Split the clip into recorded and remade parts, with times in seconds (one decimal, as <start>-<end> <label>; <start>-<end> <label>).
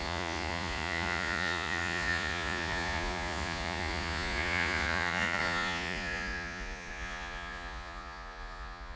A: 0.0-9.0 remade